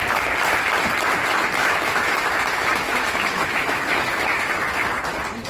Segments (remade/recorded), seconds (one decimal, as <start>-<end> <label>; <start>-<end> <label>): 0.0-1.6 recorded; 1.6-4.9 remade; 4.9-5.5 recorded